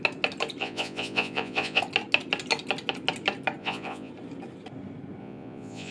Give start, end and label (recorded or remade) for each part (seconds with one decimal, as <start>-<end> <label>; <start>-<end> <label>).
0.0-0.6 recorded; 0.6-1.8 remade; 1.8-3.6 recorded; 3.6-4.1 remade; 4.1-5.2 recorded; 5.2-5.9 remade